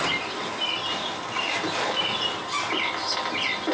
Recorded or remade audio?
recorded